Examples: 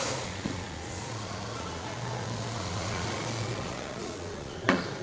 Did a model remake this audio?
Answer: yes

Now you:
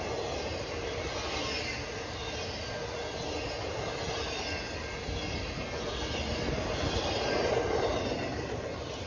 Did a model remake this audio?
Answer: no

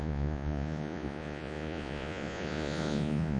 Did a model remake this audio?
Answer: yes